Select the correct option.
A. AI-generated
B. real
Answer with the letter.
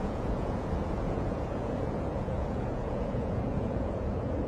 A